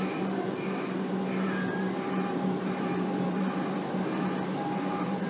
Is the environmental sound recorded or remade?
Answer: remade